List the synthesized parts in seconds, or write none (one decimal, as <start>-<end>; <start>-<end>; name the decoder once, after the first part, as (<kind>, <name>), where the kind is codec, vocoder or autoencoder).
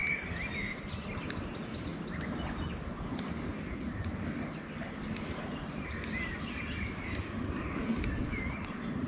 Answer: none